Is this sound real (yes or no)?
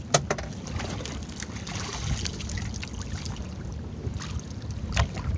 yes